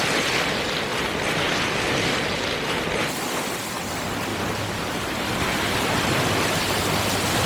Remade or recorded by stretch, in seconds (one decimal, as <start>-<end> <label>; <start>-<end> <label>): 0.0-7.5 recorded